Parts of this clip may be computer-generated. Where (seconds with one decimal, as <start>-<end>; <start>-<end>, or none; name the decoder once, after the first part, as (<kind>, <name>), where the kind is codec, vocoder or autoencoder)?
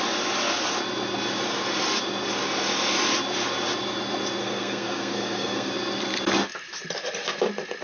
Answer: 4.4-5.7 (codec, SNAC)